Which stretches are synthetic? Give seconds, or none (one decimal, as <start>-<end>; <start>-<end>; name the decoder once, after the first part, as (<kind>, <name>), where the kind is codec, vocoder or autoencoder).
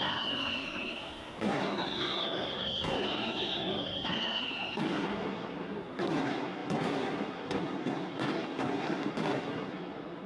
0.0-10.3 (codec, SNAC)